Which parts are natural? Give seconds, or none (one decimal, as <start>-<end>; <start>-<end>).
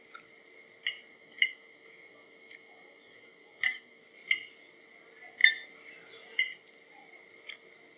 0.0-1.1; 4.0-8.0